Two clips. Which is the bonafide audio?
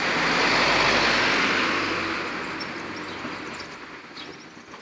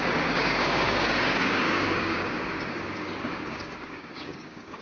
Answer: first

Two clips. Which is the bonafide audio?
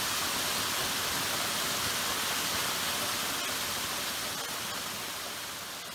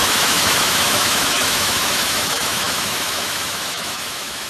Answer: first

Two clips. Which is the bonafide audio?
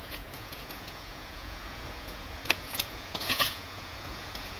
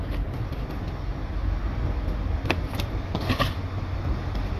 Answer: second